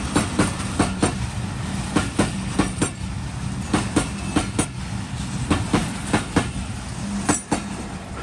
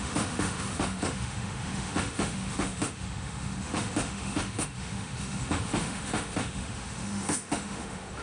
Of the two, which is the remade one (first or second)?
second